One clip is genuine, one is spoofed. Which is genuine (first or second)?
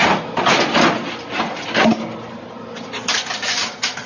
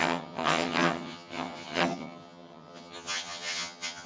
first